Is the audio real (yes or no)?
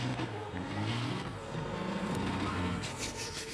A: no